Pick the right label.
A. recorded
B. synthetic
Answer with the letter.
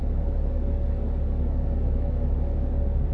B